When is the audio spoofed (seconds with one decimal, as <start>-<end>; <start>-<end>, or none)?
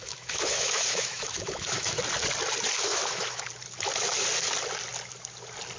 0.0-2.0; 2.9-3.4